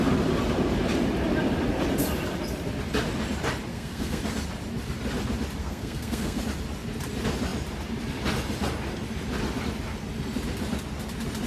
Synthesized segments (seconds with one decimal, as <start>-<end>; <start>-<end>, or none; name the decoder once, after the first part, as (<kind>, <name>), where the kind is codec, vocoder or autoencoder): 3.7-4.2 (codec, SNAC); 5.6-6.4